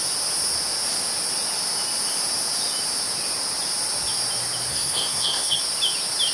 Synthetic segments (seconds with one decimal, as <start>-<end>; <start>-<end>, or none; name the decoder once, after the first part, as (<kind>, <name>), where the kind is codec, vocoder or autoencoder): 4.7-5.6 (codec, SNAC)

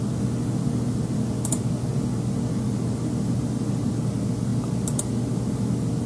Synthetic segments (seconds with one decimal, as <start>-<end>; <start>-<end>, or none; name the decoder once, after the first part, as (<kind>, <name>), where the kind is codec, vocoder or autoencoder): none

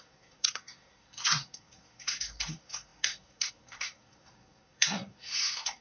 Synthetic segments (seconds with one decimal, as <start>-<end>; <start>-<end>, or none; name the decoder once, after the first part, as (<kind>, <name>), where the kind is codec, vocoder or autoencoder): 0.0-5.8 (codec, SNAC)

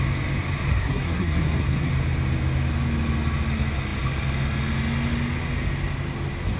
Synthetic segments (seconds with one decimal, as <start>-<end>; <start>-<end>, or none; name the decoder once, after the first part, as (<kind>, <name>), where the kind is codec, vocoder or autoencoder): 0.7-1.9 (codec, SNAC)

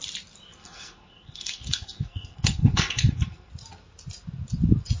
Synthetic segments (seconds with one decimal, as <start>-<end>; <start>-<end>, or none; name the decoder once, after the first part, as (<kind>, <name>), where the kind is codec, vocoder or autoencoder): 0.5-3.5 (codec, SNAC)

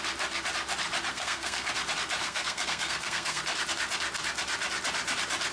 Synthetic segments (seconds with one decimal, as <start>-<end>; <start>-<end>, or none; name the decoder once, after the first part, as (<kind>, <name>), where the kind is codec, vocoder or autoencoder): 1.1-1.7 (codec, SNAC); 2.2-3.4